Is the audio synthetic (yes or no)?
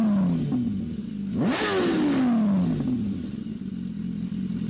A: no